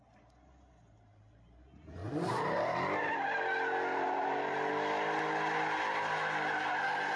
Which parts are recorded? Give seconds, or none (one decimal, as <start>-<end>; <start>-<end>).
0.0-2.0; 3.4-3.9; 4.7-7.2

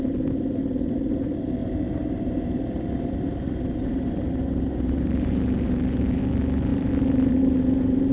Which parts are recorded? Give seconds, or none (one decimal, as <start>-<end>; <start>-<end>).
0.0-1.6; 6.2-6.7